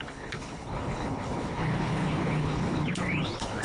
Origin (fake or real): fake